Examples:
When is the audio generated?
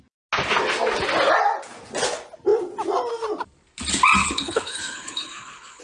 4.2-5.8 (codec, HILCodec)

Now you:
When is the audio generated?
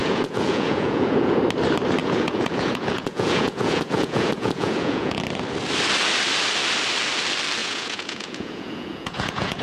0.0-1.4 (vocoder, Vocos); 2.0-5.2; 7.6-9.6